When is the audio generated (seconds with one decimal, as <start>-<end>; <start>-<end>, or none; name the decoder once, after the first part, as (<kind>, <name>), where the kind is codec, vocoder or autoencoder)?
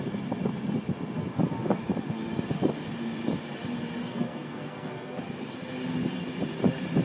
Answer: 4.0-5.2 (codec, SNAC)